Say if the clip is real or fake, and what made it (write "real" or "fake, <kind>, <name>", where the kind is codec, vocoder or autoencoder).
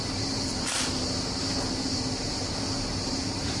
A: real